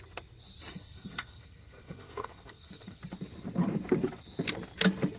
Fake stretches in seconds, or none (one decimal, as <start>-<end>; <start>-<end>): 0.7-3.0